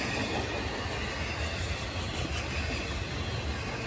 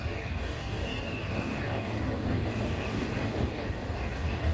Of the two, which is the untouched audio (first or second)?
first